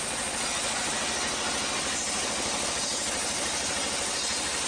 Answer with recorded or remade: recorded